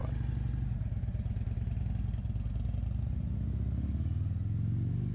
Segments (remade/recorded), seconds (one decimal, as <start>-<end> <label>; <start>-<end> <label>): 0.0-5.1 recorded